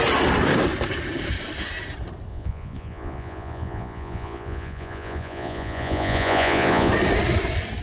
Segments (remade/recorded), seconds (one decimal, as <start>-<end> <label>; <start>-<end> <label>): 0.0-2.3 recorded; 2.3-6.9 remade; 6.9-7.8 recorded